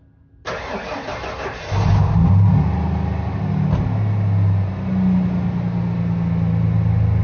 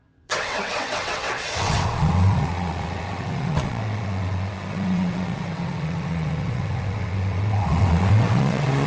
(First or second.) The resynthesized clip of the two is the second